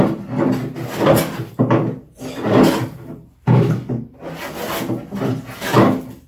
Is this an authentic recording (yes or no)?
yes